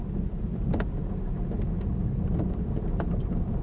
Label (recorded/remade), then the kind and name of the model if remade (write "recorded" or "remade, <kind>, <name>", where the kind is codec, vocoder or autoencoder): recorded